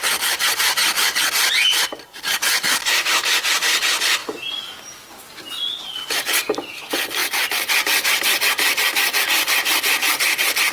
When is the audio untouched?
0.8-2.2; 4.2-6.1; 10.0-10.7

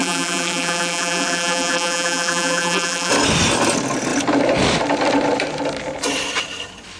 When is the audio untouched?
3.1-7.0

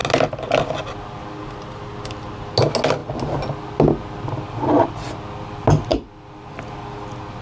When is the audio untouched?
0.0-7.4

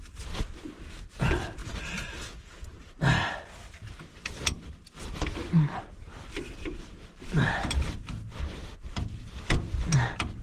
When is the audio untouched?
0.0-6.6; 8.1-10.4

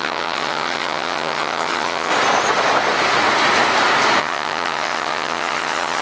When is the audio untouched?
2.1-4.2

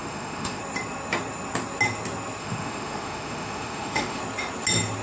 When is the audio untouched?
0.6-2.4; 4.2-5.0

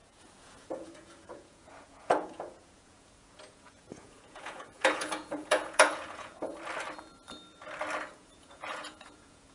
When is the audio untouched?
6.5-8.1